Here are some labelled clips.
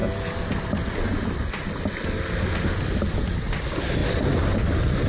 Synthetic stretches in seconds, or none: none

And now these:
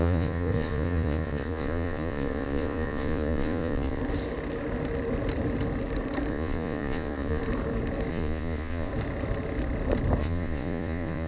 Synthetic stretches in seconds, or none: 0.0-4.0 (vocoder, Vocos); 6.3-7.4; 8.1-8.9; 10.2-11.3